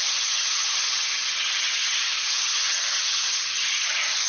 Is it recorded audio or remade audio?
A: remade